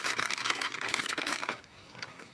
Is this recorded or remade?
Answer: remade